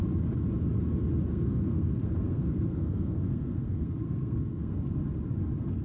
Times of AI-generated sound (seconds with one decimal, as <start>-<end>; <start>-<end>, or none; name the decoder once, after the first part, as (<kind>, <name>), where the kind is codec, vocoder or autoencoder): 1.3-4.8 (codec, SNAC)